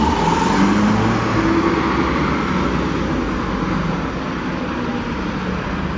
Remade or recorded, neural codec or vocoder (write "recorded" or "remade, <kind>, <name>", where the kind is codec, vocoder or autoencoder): recorded